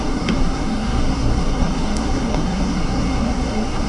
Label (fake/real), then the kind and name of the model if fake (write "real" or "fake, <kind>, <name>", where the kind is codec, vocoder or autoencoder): fake, codec, SNAC